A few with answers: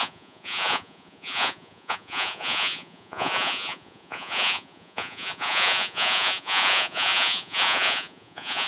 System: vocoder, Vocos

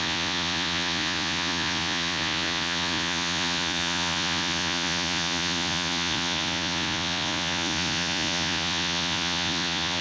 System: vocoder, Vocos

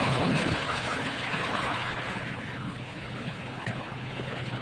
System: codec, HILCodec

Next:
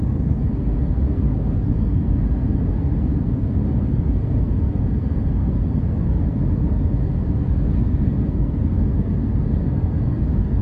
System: codec, SNAC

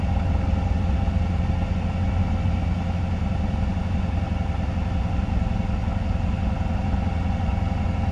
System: none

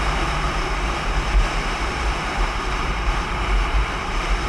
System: vocoder, BigVGAN v2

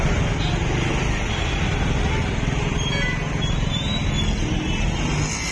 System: none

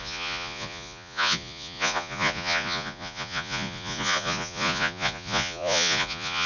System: vocoder, Vocos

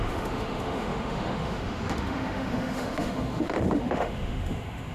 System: autoencoder, DAC-VAE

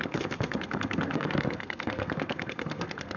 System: codec, SNAC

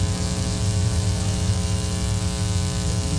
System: autoencoder, DAC-VAE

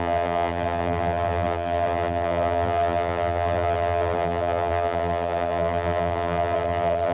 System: vocoder, BigVGAN v2